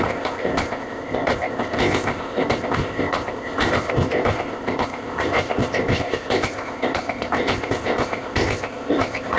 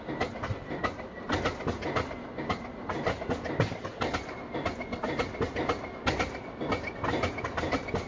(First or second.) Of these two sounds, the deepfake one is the first